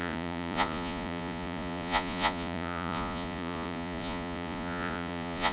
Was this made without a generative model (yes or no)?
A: no